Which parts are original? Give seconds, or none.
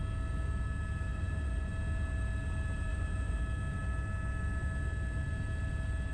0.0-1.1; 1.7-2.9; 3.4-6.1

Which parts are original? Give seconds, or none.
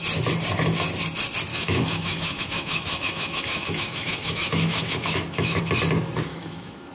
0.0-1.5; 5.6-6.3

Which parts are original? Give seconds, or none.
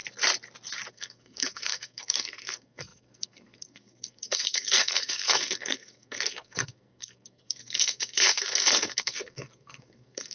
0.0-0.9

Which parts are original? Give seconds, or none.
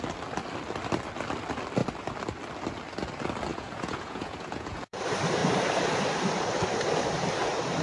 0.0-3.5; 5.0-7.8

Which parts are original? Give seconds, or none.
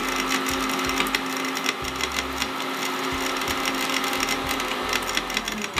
0.0-5.8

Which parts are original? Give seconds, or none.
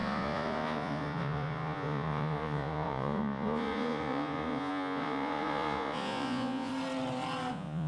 6.7-7.5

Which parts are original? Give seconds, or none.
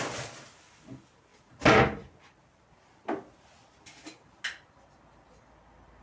0.0-6.0